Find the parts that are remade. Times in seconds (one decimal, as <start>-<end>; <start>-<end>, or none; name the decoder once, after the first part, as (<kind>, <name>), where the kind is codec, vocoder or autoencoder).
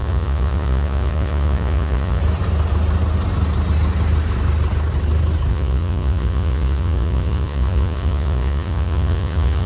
0.0-2.2 (vocoder, Vocos); 5.5-9.7